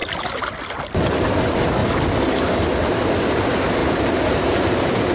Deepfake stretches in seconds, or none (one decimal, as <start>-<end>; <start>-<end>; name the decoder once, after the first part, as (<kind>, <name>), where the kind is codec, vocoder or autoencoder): 1.1-1.8 (vocoder, BigVGAN v2); 3.3-5.1

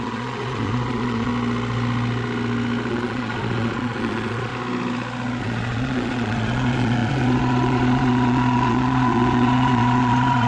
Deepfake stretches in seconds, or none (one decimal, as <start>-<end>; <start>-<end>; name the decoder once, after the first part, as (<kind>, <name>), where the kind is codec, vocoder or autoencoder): 0.0-1.3 (vocoder, Vocos); 2.9-4.5; 5.4-10.5

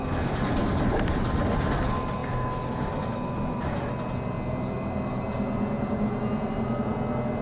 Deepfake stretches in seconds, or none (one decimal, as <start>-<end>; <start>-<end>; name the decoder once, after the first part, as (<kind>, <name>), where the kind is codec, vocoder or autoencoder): none

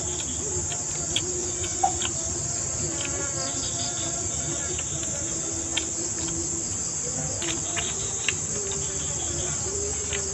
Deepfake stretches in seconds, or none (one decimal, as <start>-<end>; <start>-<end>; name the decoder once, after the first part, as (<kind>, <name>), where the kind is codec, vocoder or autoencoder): 1.4-2.0 (vocoder, Vocos)

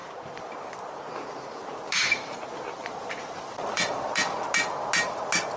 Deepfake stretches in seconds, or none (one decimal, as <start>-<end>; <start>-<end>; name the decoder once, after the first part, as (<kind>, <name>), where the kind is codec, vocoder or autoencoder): 0.0-1.0 (vocoder, BigVGAN v2); 1.6-4.4

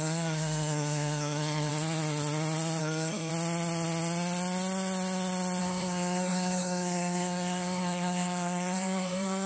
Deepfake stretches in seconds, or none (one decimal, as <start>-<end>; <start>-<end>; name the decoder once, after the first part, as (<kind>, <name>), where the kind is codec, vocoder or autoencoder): 0.0-1.7 (codec, SNAC); 2.8-3.3; 5.6-9.5

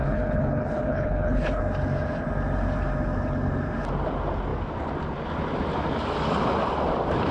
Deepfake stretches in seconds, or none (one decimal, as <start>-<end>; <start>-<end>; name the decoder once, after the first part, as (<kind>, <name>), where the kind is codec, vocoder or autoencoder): 0.0-1.6 (codec, HILCodec)